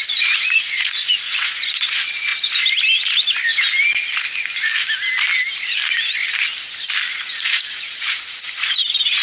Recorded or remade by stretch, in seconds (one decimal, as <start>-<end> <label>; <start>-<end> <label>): 0.0-2.3 remade; 2.3-7.1 recorded; 7.1-9.2 remade